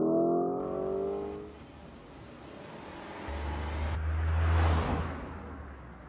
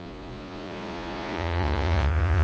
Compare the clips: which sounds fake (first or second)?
second